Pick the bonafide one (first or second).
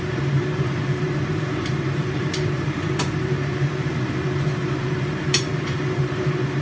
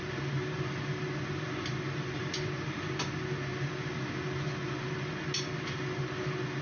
second